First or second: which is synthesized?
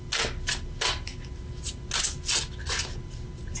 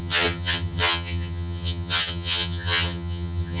second